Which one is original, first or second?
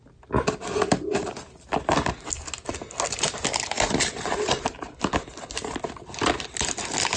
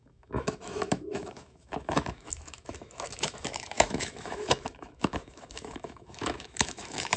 first